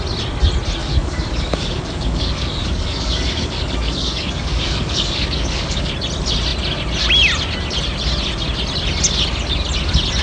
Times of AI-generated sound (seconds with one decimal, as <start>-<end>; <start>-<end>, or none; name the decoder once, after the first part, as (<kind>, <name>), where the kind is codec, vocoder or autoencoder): 0.8-5.9 (codec, DAC)